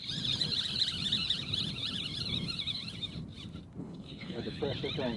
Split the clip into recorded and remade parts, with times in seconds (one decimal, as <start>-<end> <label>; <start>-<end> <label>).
0.0-3.8 recorded; 3.8-4.6 remade; 4.6-5.2 recorded

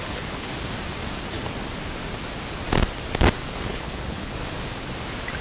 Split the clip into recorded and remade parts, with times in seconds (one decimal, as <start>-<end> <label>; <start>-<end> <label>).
0.0-0.5 remade; 0.5-3.7 recorded; 3.7-4.3 remade; 4.3-5.4 recorded

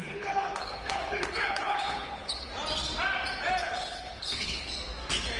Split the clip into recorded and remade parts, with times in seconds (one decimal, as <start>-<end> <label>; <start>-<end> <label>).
0.0-2.5 remade; 2.5-3.6 recorded; 3.6-4.7 remade; 4.7-5.4 recorded

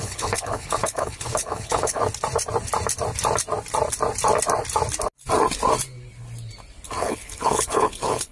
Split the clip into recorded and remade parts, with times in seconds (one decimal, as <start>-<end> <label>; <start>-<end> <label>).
0.0-2.0 remade; 2.0-7.0 recorded; 7.0-8.3 remade

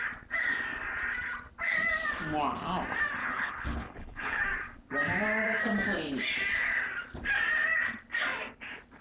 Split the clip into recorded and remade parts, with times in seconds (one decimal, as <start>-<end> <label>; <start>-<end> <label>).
0.0-3.2 recorded; 3.2-4.4 remade; 4.4-9.0 recorded

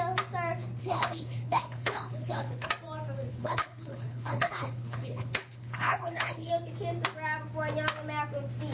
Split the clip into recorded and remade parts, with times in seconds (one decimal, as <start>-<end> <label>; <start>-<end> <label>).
0.0-0.8 recorded; 0.8-2.7 remade; 2.7-3.3 recorded; 3.3-6.5 remade; 6.5-8.7 recorded